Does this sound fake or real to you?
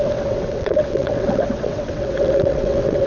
fake